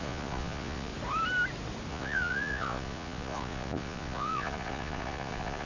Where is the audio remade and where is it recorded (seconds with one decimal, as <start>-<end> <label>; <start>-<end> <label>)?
0.0-0.9 remade; 0.9-1.9 recorded; 1.9-5.7 remade

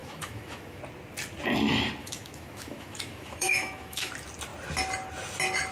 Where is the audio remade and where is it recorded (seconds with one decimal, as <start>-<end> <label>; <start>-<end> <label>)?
0.0-0.8 remade; 0.8-2.0 recorded; 2.0-4.1 remade; 4.1-5.7 recorded

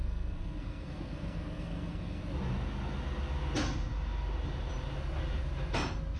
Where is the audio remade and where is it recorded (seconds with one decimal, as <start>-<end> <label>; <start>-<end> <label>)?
0.0-2.2 remade; 2.2-6.2 recorded

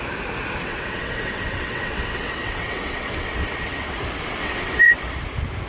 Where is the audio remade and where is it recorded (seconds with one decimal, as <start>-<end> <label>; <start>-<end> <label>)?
0.0-0.6 recorded; 0.6-4.0 remade; 4.0-4.4 recorded; 4.4-5.2 remade; 5.2-5.7 recorded

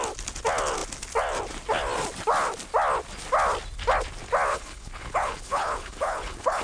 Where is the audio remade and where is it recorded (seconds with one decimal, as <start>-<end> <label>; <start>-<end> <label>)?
0.0-4.5 recorded; 4.5-6.6 remade

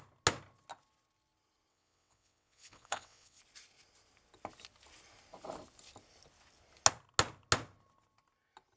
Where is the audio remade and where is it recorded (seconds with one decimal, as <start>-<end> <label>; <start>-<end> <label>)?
0.0-1.7 recorded; 1.7-3.4 remade; 3.4-8.8 recorded

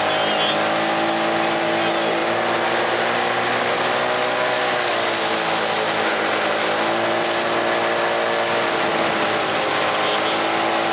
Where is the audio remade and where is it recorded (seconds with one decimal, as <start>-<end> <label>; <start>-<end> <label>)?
0.0-10.9 recorded